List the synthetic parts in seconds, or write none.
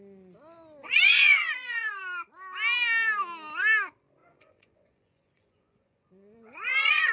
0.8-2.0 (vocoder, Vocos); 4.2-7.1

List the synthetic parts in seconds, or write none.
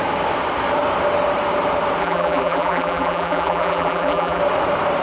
2.0-4.4 (vocoder, BigVGAN v2)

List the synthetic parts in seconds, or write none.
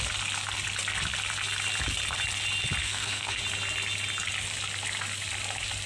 2.8-3.4 (codec, SNAC)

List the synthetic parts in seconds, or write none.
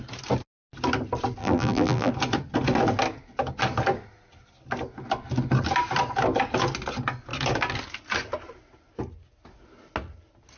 1.4-2.1 (vocoder, BigVGAN v2)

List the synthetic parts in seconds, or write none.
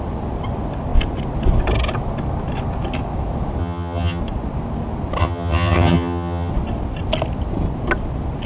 3.6-4.2 (vocoder, HiFi-GAN); 5.2-6.5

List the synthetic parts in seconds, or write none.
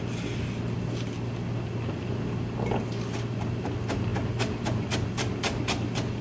none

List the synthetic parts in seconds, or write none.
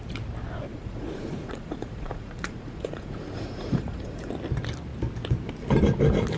0.7-4.3 (vocoder, Vocos)